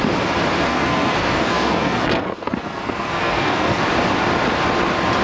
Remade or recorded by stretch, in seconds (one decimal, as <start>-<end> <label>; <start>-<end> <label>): 0.0-0.7 recorded; 0.7-3.8 remade; 3.8-5.2 recorded